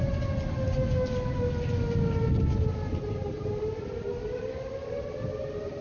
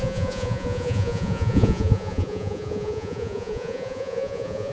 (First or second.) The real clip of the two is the first